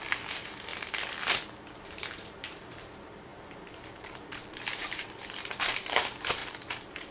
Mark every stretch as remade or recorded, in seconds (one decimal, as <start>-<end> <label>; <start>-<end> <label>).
0.0-0.7 remade; 0.7-1.8 recorded; 1.8-7.1 remade